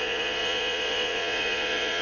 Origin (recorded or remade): remade